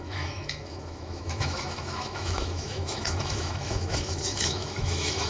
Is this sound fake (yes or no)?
yes